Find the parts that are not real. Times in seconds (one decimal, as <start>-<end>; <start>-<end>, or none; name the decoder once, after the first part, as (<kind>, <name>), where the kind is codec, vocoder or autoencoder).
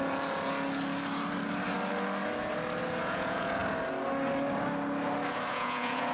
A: 3.0-3.6 (vocoder, Vocos); 5.5-6.1